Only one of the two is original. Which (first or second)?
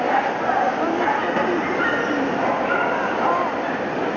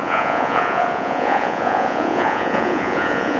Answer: first